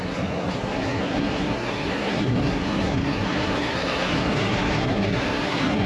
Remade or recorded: remade